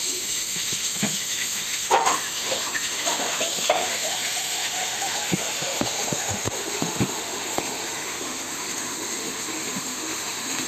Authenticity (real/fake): fake